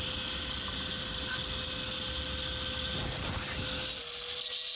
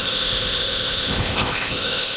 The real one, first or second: first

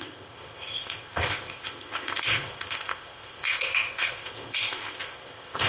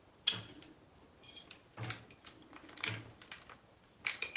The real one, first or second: second